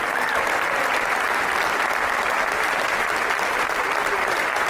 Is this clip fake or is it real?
real